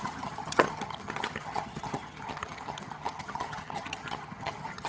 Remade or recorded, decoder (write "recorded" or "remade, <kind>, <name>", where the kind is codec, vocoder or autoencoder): remade, vocoder, HiFi-GAN